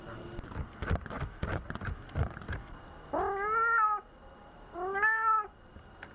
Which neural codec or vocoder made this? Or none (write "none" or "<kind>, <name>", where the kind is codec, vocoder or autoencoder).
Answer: none